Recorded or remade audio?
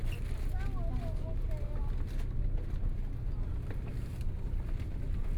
recorded